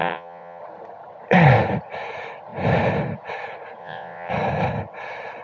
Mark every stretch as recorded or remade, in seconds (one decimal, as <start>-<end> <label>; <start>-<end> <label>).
0.0-0.6 remade; 0.6-3.8 recorded; 3.8-4.3 remade; 4.3-5.4 recorded

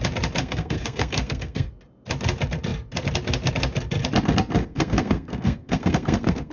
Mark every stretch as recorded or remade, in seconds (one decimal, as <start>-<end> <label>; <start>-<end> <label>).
0.0-0.4 recorded; 0.4-1.7 remade; 1.7-4.6 recorded; 4.6-6.5 remade

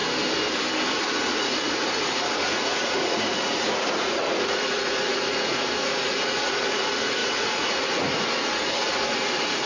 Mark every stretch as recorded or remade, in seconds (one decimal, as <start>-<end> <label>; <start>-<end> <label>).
0.0-0.9 recorded; 0.9-9.7 remade